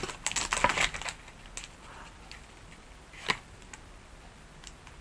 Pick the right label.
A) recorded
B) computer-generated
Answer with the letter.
A